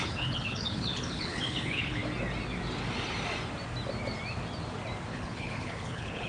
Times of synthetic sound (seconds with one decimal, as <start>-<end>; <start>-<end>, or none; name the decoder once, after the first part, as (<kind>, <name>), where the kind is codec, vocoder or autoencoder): 0.0-2.0 (codec, HILCodec); 5.1-6.3